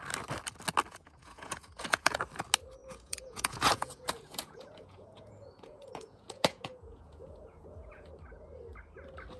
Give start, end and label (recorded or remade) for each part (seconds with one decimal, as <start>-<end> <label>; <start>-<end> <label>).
0.0-0.9 recorded; 0.9-2.2 remade; 2.2-2.8 recorded; 2.8-8.1 remade; 8.1-9.4 recorded